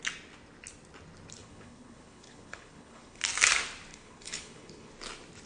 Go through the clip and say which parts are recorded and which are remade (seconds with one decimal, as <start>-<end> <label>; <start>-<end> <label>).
0.0-1.4 recorded; 1.4-3.2 remade; 3.2-3.9 recorded; 3.9-4.9 remade; 4.9-5.5 recorded